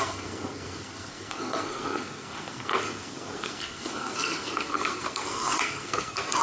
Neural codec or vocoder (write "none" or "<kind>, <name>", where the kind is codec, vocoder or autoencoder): codec, SNAC